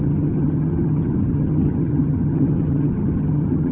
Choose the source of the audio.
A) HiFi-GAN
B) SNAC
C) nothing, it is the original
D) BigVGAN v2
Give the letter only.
A